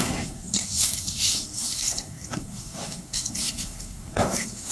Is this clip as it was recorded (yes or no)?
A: no